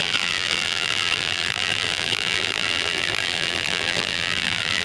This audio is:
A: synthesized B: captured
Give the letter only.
A